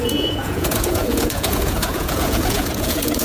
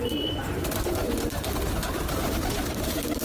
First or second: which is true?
second